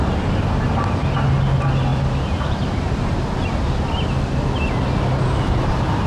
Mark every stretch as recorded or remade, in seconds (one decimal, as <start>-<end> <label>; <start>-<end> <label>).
0.0-6.1 recorded